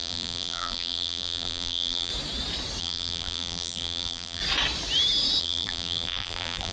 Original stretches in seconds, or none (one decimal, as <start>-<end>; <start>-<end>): 2.1-2.8; 4.4-5.4